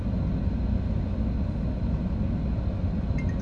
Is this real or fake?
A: real